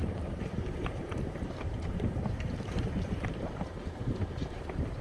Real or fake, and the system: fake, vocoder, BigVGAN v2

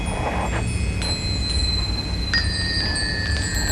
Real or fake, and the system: real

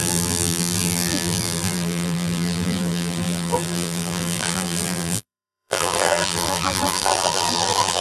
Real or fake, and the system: fake, vocoder, BigVGAN v2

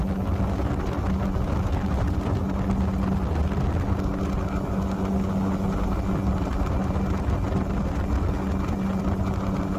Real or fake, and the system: real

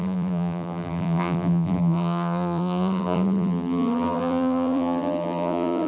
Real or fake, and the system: fake, vocoder, BigVGAN v2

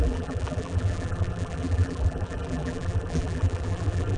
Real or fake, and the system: fake, vocoder, BigVGAN v2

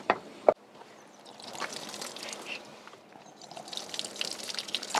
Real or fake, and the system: fake, vocoder, BigVGAN v2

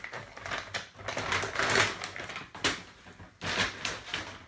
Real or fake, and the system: real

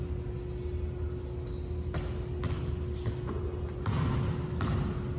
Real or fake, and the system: real